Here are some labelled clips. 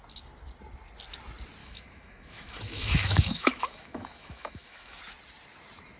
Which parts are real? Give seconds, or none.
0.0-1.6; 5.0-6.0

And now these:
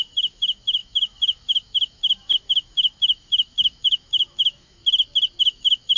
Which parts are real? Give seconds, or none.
4.8-5.4

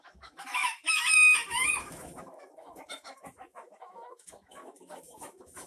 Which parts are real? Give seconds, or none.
none

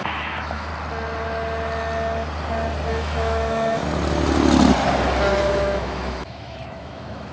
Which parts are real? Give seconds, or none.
0.7-2.9; 3.8-5.4